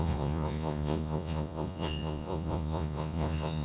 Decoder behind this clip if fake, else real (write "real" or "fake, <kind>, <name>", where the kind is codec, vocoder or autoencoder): fake, vocoder, Vocos